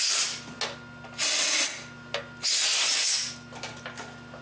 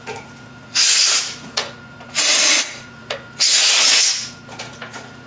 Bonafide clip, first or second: first